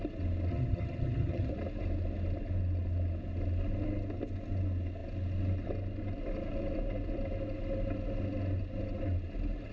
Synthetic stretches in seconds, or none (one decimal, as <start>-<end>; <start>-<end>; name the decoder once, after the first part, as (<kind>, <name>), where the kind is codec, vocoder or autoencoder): 0.5-1.5 (vocoder, HiFi-GAN)